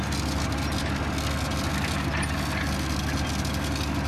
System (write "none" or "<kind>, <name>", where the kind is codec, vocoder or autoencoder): none